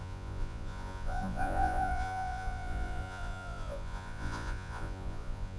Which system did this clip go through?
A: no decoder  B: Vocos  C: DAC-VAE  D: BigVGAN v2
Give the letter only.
B